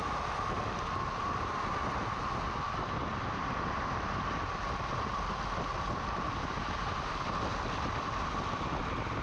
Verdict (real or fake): real